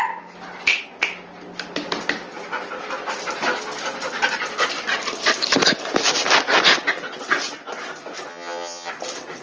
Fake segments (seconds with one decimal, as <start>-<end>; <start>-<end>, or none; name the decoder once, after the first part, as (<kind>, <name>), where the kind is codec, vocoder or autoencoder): 8.3-8.9 (vocoder, HiFi-GAN)